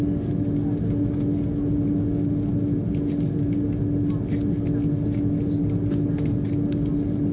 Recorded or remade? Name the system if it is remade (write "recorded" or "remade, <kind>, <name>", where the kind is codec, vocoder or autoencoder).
recorded